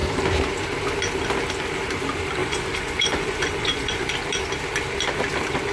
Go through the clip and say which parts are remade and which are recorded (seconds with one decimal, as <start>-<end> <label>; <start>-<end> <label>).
0.0-2.4 recorded; 2.4-4.1 remade; 4.1-5.7 recorded